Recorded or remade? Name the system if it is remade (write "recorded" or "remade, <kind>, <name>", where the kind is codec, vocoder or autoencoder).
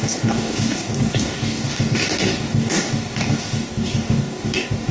remade, codec, DAC